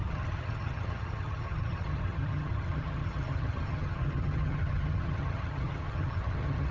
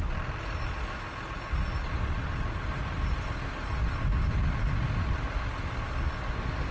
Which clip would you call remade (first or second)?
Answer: first